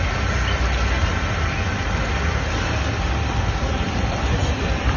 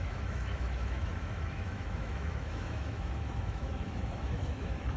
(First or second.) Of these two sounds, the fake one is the second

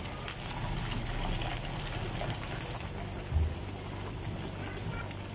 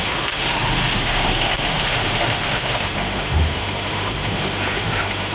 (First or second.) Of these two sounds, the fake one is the second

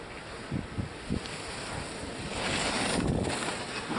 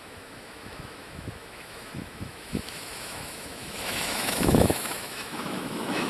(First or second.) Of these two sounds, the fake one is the second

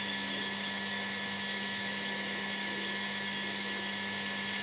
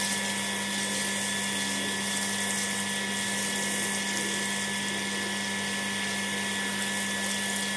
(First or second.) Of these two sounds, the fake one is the first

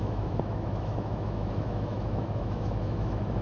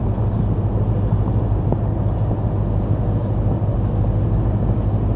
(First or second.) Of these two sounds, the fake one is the first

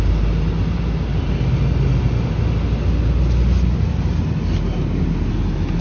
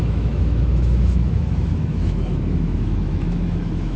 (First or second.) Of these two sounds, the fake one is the second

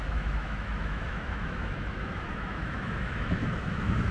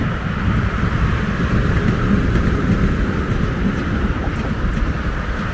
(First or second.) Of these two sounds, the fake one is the first